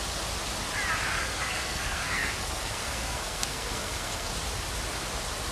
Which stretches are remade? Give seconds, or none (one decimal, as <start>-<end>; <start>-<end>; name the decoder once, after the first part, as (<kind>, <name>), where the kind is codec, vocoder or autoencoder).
1.0-4.3 (codec, SNAC)